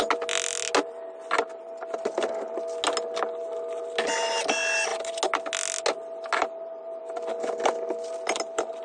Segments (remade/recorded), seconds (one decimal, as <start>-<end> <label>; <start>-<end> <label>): 0.0-8.8 recorded